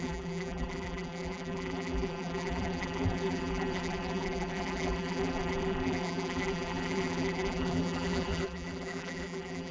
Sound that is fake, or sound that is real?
fake